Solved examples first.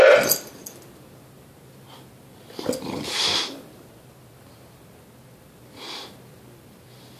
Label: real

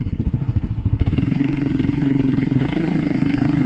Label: fake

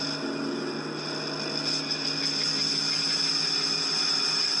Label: real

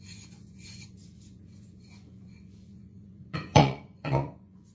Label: fake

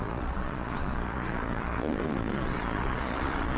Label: fake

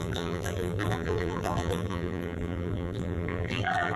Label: fake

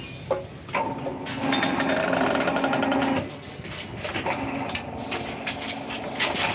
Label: real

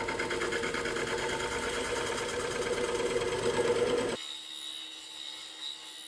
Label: real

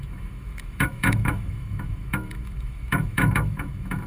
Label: fake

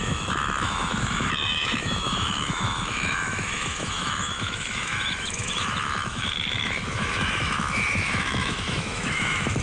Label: fake